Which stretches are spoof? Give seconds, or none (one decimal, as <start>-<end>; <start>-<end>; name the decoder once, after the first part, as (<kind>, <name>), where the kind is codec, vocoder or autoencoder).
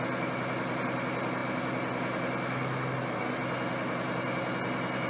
none